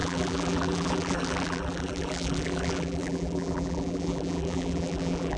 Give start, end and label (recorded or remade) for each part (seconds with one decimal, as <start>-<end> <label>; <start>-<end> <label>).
0.0-5.4 remade